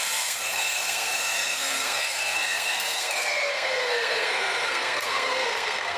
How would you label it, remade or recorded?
remade